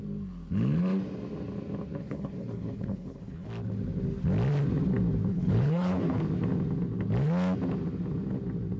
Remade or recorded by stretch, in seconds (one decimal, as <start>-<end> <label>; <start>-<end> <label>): 0.0-2.0 recorded; 2.0-3.5 remade; 3.5-5.3 recorded; 5.3-6.2 remade; 6.2-8.8 recorded